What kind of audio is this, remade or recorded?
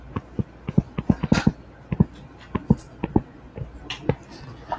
recorded